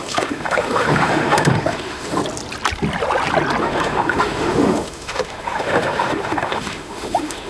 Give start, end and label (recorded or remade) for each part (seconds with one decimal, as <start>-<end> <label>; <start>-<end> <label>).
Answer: 0.0-2.2 remade; 2.2-3.6 recorded; 3.6-7.5 remade